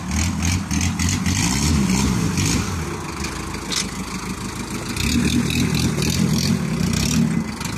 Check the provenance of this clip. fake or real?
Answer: real